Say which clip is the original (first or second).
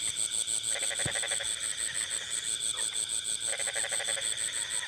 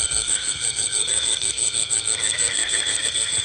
first